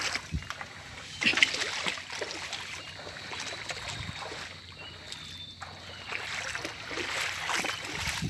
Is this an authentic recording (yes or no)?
yes